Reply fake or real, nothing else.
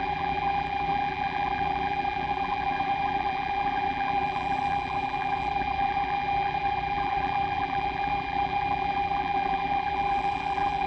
fake